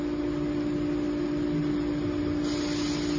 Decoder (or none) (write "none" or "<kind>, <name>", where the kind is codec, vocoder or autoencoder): none